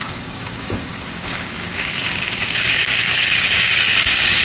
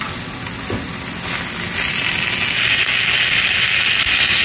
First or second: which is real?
second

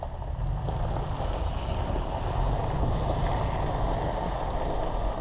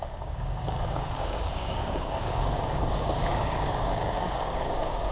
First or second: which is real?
first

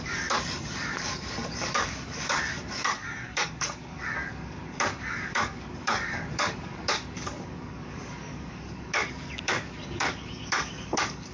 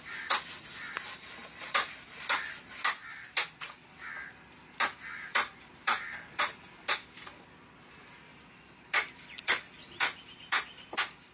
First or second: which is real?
second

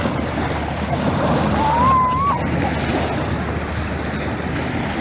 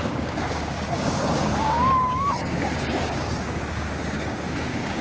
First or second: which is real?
first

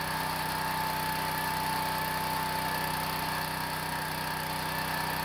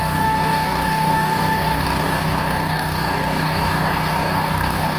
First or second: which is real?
first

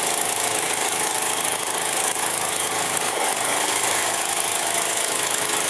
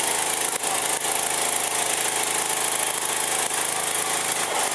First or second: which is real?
second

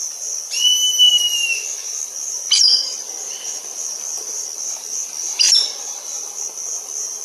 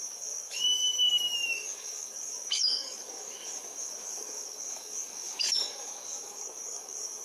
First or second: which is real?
first